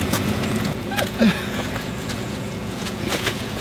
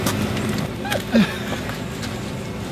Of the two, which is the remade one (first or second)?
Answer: first